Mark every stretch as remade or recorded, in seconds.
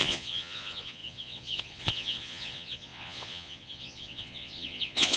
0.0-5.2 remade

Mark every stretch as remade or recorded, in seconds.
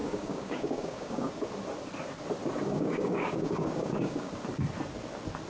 0.0-1.3 remade; 1.3-2.7 recorded; 2.7-4.3 remade; 4.3-5.5 recorded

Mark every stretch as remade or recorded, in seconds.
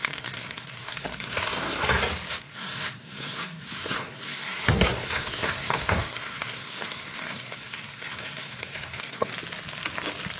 0.0-1.8 remade; 1.8-2.4 recorded; 2.4-9.3 remade; 9.3-10.4 recorded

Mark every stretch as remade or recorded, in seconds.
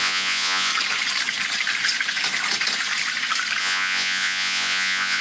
0.0-0.7 remade; 0.7-3.6 recorded; 3.6-5.2 remade